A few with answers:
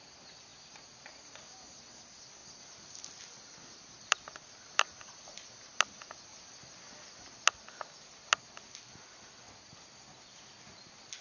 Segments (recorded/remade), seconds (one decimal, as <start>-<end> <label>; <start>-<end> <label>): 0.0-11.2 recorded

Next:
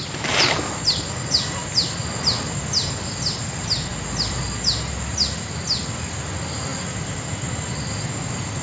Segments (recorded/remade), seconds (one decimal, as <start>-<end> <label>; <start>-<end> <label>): 0.0-8.6 recorded

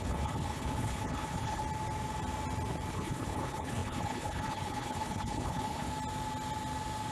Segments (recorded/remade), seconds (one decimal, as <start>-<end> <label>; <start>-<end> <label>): 0.0-1.6 remade; 1.6-2.9 recorded; 2.9-5.9 remade; 5.9-7.1 recorded

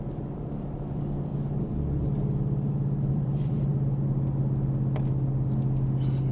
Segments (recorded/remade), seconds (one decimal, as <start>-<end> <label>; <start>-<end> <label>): 0.0-1.3 remade; 1.3-3.1 recorded; 3.1-3.7 remade; 3.7-6.3 recorded

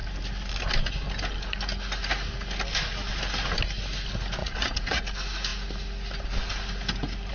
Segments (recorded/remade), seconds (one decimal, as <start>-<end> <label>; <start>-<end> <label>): 0.0-4.4 recorded; 4.4-5.0 remade; 5.0-7.3 recorded

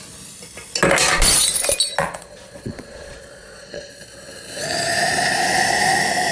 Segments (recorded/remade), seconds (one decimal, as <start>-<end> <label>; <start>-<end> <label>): 0.0-2.0 recorded; 2.0-3.9 remade; 3.9-6.3 recorded